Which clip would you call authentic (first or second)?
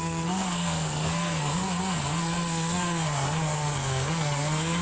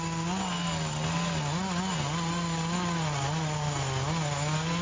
second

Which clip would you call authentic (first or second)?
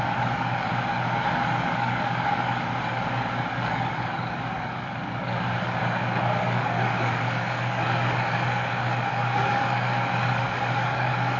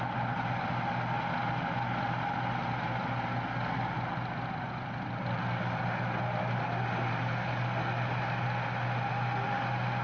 second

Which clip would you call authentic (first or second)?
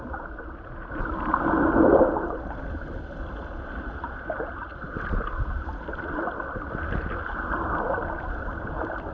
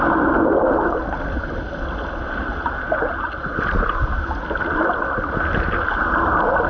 second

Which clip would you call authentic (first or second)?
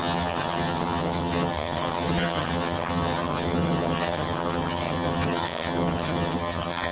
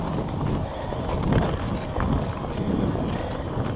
second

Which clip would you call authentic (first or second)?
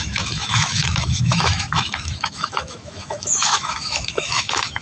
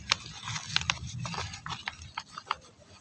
second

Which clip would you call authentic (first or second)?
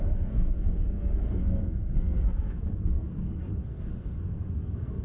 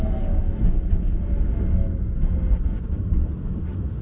second